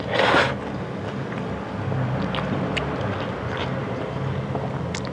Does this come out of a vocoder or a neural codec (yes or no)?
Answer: no